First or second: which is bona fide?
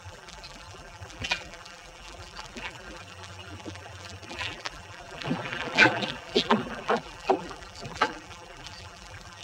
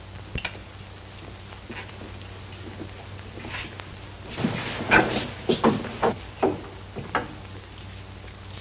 second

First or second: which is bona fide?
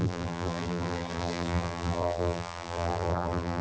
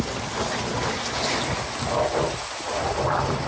second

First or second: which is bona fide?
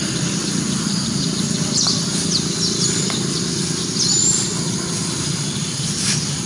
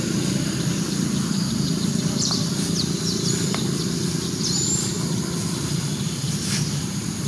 first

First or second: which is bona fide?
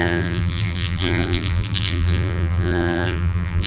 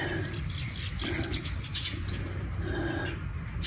second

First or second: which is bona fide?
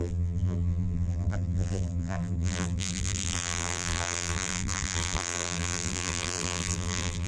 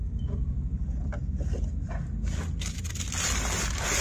second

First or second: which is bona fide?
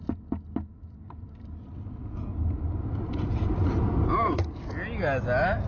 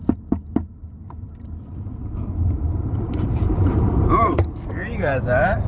first